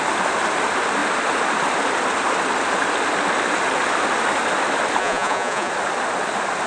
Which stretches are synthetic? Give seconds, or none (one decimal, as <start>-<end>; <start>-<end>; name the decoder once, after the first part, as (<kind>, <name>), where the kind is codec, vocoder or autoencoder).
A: 5.0-5.7 (vocoder, Vocos)